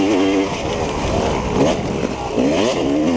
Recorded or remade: recorded